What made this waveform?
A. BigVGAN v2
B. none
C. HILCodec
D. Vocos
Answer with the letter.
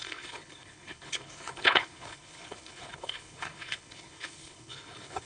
C